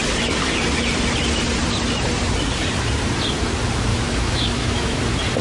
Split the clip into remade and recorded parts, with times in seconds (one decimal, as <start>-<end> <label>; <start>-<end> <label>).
0.0-3.9 recorded; 3.9-5.0 remade; 5.0-5.4 recorded